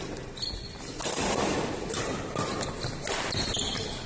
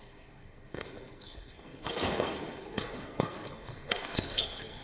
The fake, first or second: second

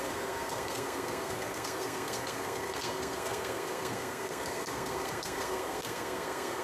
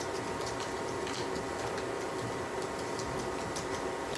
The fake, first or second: first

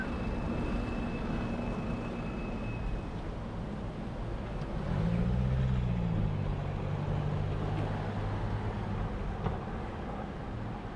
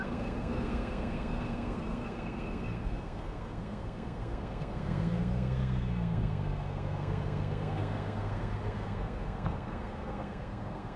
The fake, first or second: second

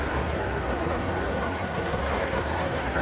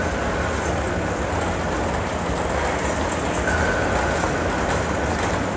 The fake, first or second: first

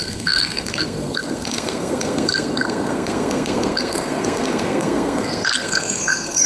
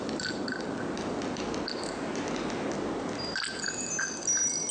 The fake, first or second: first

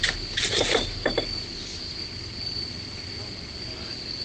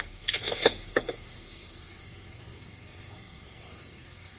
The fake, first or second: second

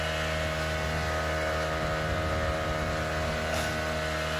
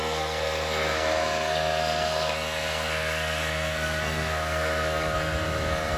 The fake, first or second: second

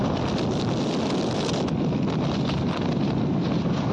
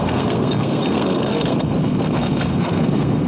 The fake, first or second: second